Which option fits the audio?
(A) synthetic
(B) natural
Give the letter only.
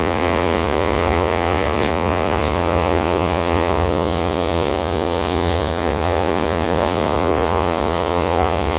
A